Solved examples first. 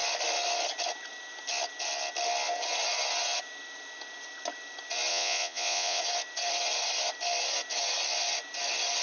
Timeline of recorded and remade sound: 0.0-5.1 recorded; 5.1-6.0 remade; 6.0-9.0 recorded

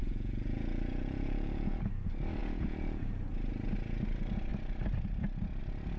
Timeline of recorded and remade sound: 0.0-1.9 remade; 1.9-2.4 recorded; 2.4-3.1 remade; 3.1-6.0 recorded

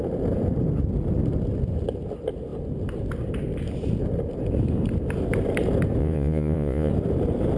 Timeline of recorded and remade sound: 0.0-6.0 recorded; 6.0-6.9 remade; 6.9-7.6 recorded

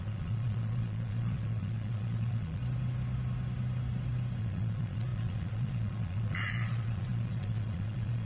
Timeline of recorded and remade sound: 0.0-2.6 remade; 2.6-4.4 recorded; 4.4-8.3 remade

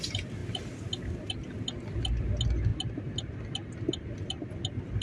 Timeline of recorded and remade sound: 0.0-5.0 recorded